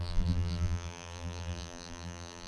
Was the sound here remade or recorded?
remade